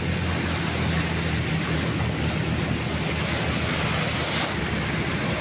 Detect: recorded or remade recorded